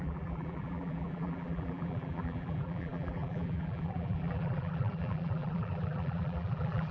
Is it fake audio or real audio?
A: fake